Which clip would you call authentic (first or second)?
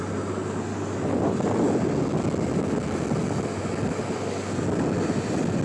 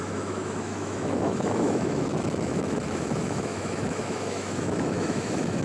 first